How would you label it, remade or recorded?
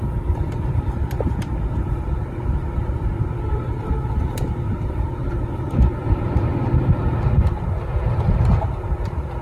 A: remade